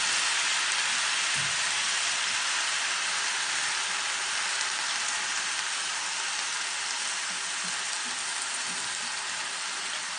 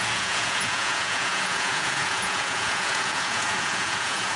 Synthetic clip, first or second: second